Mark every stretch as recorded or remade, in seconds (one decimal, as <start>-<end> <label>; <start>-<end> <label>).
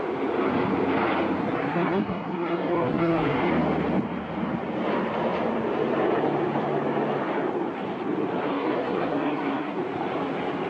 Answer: 0.0-1.4 recorded; 1.4-3.5 remade; 3.5-8.5 recorded; 8.5-9.8 remade; 9.8-10.7 recorded